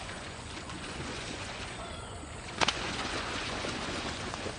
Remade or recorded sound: remade